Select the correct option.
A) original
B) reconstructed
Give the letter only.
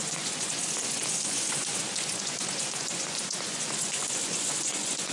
B